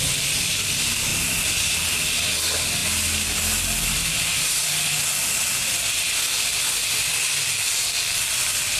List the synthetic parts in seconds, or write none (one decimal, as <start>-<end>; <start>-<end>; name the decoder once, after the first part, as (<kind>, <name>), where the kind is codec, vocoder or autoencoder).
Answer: none